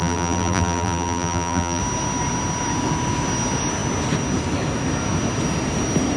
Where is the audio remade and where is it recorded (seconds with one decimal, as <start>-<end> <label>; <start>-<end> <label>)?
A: 0.0-1.8 remade; 1.8-6.2 recorded